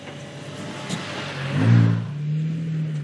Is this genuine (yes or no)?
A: yes